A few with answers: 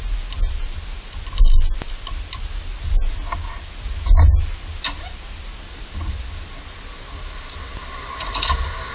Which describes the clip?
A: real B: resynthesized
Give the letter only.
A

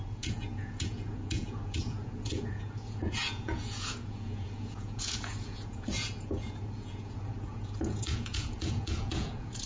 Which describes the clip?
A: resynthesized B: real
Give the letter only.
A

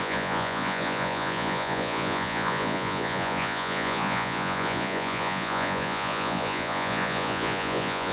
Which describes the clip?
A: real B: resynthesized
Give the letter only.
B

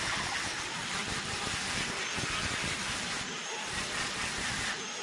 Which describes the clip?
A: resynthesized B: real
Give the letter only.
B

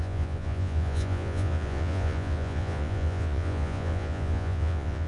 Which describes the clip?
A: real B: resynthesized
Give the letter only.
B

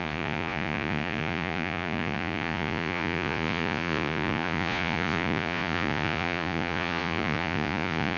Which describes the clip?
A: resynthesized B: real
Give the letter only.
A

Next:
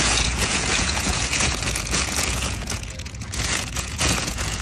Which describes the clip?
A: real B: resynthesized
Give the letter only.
B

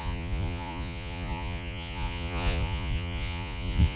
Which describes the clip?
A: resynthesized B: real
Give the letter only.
A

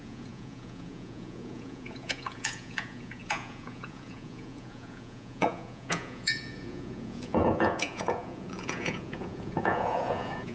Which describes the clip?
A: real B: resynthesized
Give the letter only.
B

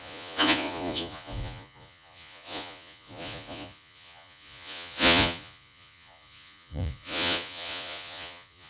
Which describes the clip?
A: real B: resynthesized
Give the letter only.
B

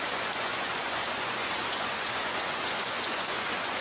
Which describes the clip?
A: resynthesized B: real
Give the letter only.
A